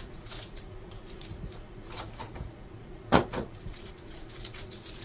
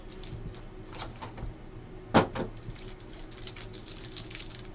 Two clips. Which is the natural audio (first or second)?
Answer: second